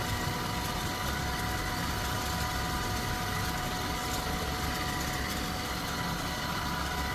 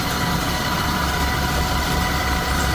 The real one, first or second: first